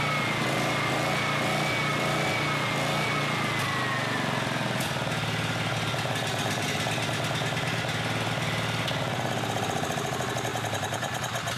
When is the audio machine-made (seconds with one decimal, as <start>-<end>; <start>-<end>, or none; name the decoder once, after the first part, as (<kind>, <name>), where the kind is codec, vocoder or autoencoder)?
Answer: 10.5-11.2 (vocoder, BigVGAN v2)